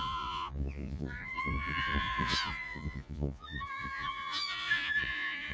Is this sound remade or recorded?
remade